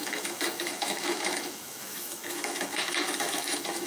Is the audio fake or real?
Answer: fake